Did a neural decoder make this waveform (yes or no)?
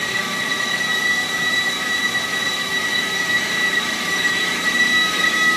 yes